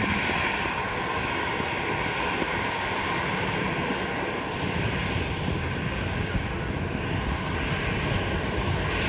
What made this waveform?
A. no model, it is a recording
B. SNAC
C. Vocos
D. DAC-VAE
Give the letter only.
A